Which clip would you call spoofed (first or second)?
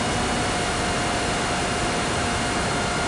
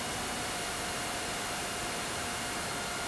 second